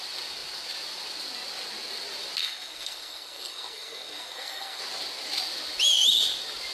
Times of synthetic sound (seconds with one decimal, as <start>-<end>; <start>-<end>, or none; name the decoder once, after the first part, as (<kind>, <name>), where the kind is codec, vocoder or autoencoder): 2.4-4.8 (codec, SNAC)

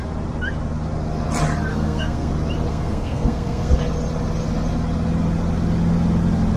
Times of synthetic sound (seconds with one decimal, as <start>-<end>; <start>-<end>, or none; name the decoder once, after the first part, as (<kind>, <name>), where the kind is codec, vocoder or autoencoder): 1.7-2.3 (codec, SNAC); 2.7-3.8

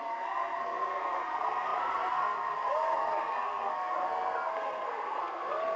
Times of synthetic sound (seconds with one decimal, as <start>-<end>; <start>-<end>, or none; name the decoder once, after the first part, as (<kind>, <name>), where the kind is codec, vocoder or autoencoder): 0.0-5.8 (codec, SNAC)